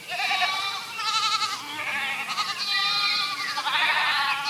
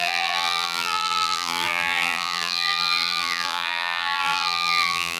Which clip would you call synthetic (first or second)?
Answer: second